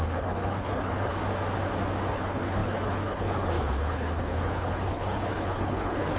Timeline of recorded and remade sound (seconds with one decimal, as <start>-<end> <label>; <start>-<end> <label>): 0.0-1.1 remade; 1.1-2.1 recorded; 2.1-6.2 remade

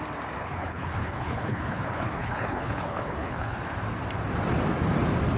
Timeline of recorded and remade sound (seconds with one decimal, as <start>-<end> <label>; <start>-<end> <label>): 0.0-0.4 recorded; 0.4-3.6 remade; 3.6-5.4 recorded

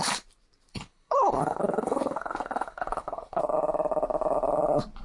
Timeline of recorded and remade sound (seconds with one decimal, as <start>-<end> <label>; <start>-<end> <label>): 0.0-0.7 recorded; 0.7-3.4 remade; 3.4-5.0 recorded

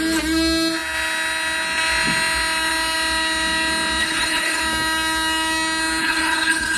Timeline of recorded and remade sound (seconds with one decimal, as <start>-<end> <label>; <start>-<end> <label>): 0.0-4.0 recorded; 4.0-4.6 remade; 4.6-6.0 recorded; 6.0-6.8 remade

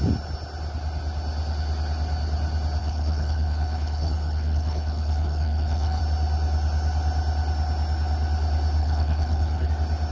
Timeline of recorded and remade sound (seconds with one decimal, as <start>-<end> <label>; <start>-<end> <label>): 0.0-2.8 recorded; 2.8-6.0 remade; 6.0-8.8 recorded; 8.8-9.7 remade; 9.7-10.1 recorded

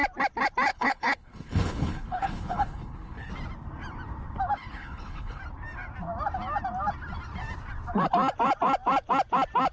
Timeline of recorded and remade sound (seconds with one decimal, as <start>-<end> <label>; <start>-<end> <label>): 0.0-0.7 recorded; 0.7-3.3 remade; 3.3-4.6 recorded; 4.6-5.4 remade; 5.4-9.7 recorded